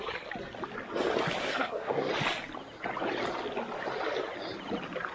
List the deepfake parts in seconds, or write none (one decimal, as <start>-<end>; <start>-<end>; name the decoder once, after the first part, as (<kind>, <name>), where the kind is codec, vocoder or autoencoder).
1.4-2.1 (codec, SNAC)